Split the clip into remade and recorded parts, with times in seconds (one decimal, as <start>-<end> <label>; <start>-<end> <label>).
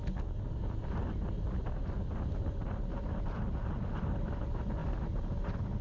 0.0-5.8 recorded